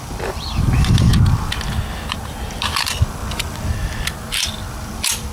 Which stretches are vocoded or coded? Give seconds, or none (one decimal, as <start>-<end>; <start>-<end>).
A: 0.0-1.1; 2.1-3.2; 3.7-5.3